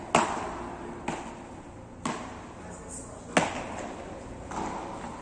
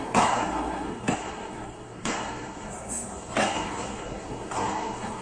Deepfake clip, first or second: second